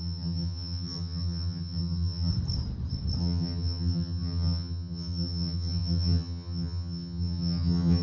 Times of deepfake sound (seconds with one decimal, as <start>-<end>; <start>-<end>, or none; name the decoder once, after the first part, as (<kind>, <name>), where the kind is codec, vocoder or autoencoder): 0.0-2.3 (vocoder, HiFi-GAN); 3.2-8.0